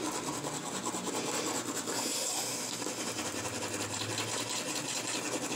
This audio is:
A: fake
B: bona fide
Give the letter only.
B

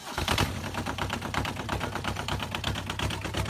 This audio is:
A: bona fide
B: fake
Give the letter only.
A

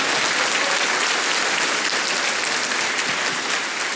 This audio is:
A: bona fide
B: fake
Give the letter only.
A